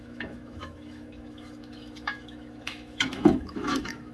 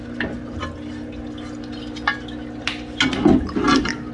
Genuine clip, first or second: second